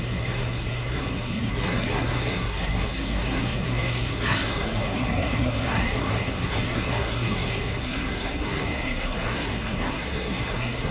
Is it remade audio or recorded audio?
remade